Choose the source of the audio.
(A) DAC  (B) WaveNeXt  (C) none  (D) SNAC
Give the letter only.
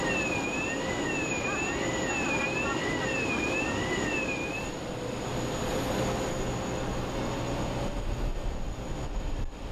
C